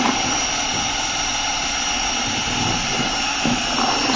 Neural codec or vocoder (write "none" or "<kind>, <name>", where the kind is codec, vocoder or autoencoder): vocoder, BigVGAN v2